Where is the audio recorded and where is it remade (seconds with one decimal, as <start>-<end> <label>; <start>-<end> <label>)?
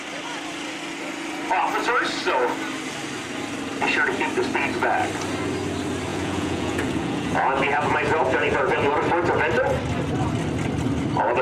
0.0-6.1 recorded; 6.1-8.9 remade; 8.9-11.4 recorded